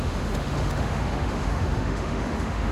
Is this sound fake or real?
fake